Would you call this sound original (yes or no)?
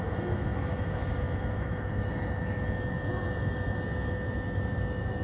no